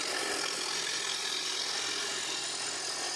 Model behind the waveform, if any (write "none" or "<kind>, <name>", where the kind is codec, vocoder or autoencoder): none